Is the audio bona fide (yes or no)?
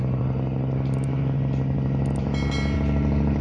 yes